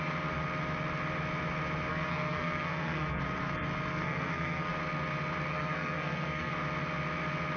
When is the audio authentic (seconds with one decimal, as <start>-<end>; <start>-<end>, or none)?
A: 0.0-1.9; 3.2-3.9; 4.7-5.5; 6.5-7.6